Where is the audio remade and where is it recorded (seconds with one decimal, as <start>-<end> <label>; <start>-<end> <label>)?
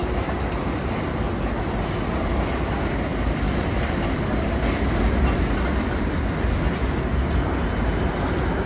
0.0-8.7 recorded